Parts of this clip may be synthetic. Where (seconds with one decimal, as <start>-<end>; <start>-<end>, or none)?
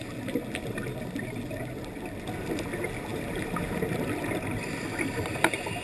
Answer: 3.1-4.3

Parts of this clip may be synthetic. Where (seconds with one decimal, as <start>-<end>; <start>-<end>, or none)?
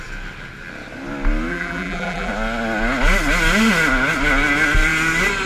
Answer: 1.5-2.3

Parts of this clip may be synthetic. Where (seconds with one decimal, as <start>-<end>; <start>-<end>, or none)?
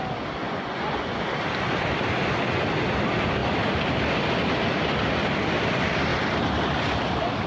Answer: 0.4-1.2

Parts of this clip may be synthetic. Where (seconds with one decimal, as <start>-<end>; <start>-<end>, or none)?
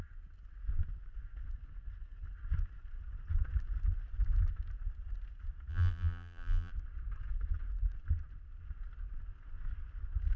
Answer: 5.7-6.7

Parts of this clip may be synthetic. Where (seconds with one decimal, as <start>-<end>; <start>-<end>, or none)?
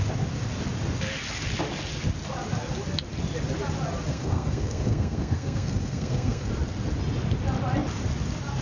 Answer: 4.1-6.5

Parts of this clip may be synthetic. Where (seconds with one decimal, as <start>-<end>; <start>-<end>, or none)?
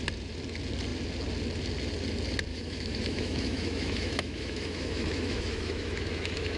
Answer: 2.5-6.6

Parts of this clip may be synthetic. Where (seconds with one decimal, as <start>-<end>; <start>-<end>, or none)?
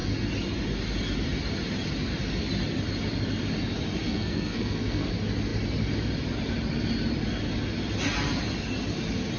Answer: 4.0-5.1